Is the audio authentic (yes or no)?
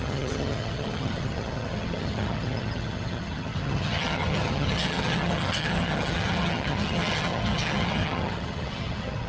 no